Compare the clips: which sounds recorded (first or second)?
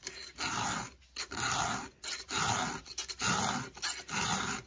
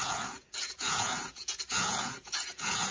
first